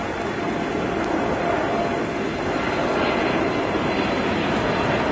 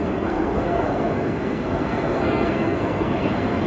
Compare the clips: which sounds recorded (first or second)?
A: first